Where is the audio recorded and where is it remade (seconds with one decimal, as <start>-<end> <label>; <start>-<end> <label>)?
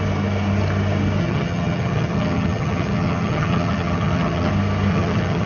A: 0.0-1.2 recorded; 1.2-4.5 remade; 4.5-4.9 recorded; 4.9-5.5 remade